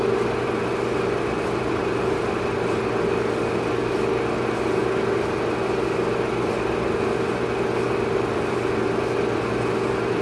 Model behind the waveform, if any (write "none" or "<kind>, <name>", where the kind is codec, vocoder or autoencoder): none